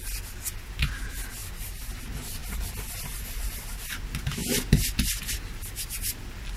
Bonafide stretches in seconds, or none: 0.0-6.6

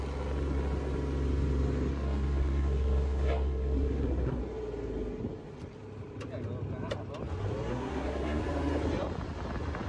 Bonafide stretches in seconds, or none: 0.0-1.9; 4.4-7.7; 8.4-9.9

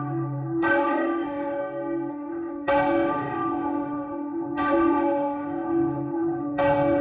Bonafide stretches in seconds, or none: 1.6-2.1